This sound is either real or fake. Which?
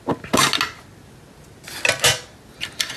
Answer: real